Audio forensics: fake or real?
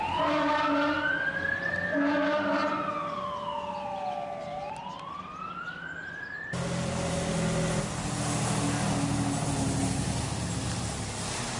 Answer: real